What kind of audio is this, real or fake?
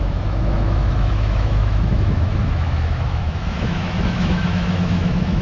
fake